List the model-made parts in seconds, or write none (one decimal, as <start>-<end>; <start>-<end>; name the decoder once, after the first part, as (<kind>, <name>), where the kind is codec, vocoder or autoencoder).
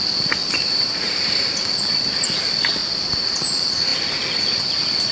0.4-1.2 (vocoder, BigVGAN v2)